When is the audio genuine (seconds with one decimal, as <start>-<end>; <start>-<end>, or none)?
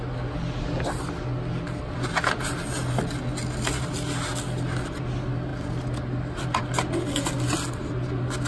0.0-8.5